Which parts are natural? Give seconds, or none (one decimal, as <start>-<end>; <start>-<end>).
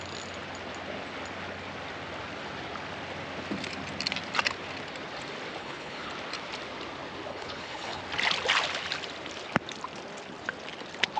0.0-5.6; 6.1-7.3; 8.0-11.2